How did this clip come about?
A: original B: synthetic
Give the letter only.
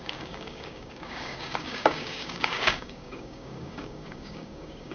B